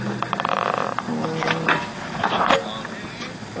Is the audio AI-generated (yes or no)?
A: no